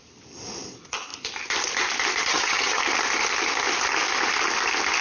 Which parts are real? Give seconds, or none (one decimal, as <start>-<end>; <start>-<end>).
0.0-2.2; 2.8-5.0

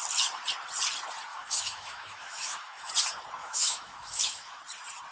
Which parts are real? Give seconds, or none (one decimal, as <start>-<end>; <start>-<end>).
0.0-1.3; 2.9-3.4; 4.6-5.1

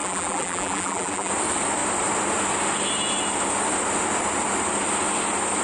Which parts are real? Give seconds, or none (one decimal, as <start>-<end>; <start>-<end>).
1.3-5.6

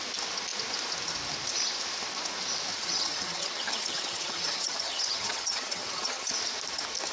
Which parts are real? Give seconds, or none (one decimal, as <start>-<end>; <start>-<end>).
0.0-2.7; 6.3-7.1

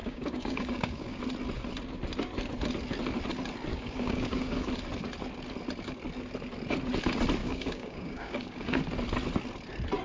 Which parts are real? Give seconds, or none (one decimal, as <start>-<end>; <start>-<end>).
1.2-3.7; 4.7-7.4; 8.8-10.0

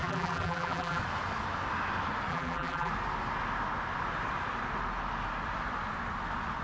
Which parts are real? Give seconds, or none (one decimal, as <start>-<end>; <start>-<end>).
1.0-2.3; 2.9-6.6

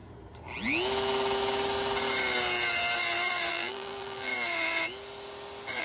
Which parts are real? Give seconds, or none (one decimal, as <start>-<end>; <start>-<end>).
0.0-3.5; 4.3-5.8